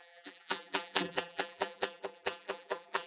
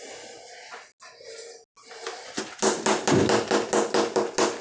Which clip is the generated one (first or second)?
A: first